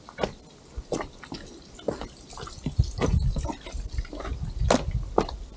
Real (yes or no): yes